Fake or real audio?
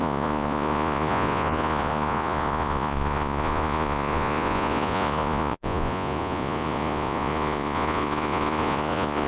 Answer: fake